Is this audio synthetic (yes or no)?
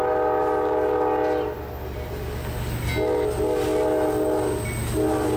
no